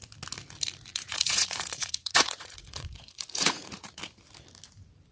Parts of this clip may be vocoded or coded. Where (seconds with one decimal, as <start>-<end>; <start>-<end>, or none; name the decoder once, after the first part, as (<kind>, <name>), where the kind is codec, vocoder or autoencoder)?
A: 0.9-4.0 (vocoder, Vocos)